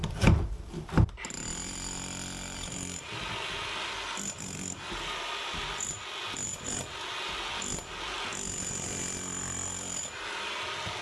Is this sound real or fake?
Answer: real